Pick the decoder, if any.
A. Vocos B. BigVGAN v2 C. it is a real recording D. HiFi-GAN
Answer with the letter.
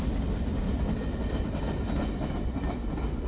C